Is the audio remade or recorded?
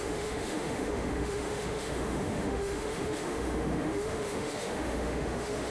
remade